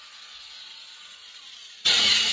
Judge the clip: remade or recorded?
remade